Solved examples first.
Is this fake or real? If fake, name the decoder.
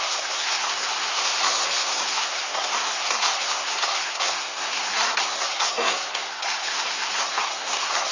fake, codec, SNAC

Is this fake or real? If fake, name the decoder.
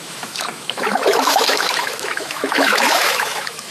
fake, autoencoder, DAC-VAE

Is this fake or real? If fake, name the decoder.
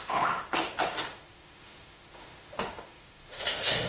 fake, autoencoder, DAC-VAE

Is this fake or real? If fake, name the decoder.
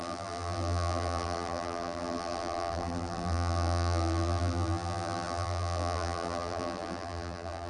fake, vocoder, BigVGAN v2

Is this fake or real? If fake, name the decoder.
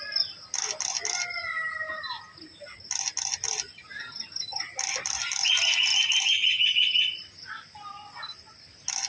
real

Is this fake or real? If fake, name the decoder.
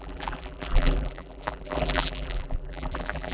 fake, vocoder, BigVGAN v2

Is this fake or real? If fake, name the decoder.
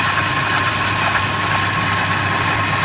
real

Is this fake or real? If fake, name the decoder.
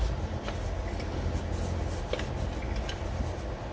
real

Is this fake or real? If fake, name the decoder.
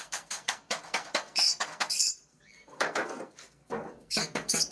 fake, codec, SNAC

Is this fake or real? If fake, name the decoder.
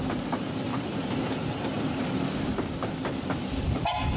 real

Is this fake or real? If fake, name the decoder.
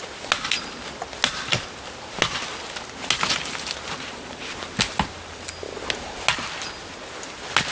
real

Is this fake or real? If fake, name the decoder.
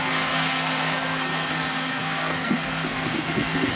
fake, codec, SNAC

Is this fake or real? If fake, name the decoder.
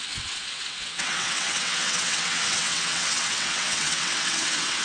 fake, vocoder, WaveNeXt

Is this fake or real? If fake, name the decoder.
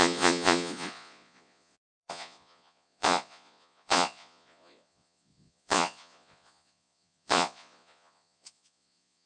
fake, vocoder, Vocos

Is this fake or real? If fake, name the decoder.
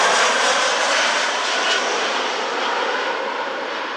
real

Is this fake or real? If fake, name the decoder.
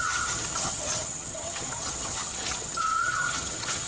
fake, vocoder, HiFi-GAN